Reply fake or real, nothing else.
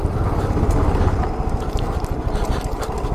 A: real